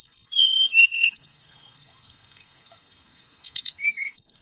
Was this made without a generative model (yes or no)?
no